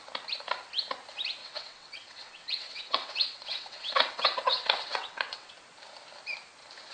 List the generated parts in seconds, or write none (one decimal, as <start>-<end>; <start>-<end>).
1.4-5.5